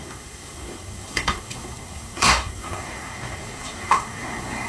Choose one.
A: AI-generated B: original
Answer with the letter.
A